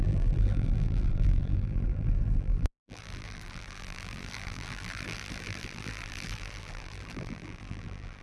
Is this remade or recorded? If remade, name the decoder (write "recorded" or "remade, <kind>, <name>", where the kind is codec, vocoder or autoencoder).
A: remade, vocoder, BigVGAN v2